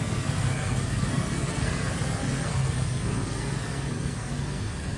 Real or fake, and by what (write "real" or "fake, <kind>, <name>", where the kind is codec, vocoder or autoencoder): fake, codec, SNAC